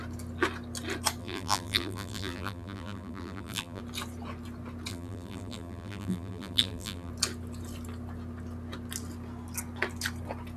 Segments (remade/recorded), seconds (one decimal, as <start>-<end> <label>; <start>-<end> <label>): 0.0-1.2 recorded; 1.2-3.8 remade; 3.8-4.9 recorded; 4.9-7.1 remade; 7.1-10.6 recorded